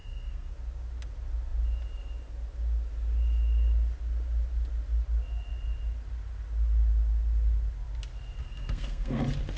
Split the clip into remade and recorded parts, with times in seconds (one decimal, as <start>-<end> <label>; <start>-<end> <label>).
0.0-0.5 remade; 0.5-8.4 recorded; 8.4-9.2 remade; 9.2-9.6 recorded